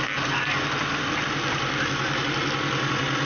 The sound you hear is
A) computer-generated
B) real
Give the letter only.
B